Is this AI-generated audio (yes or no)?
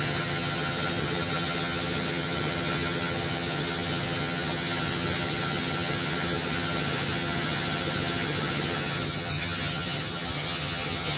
yes